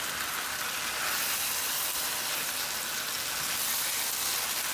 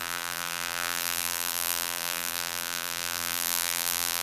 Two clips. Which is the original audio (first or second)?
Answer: first